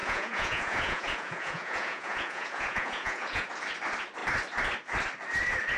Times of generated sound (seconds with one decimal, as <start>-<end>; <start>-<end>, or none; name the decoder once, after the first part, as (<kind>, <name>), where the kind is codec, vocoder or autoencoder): 0.0-3.5 (vocoder, Vocos)